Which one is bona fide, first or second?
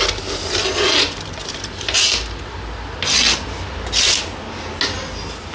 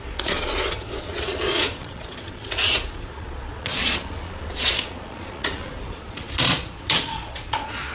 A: first